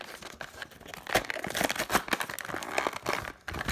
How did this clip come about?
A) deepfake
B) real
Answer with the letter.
B